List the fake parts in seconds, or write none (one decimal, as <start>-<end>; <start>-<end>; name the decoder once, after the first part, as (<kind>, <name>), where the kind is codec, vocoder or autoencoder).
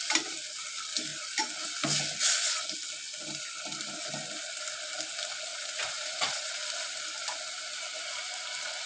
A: 5.5-6.5 (vocoder, Vocos)